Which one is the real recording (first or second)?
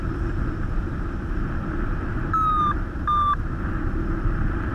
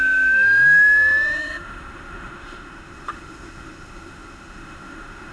first